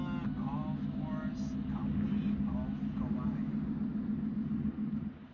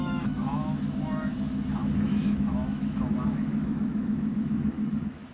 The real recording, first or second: first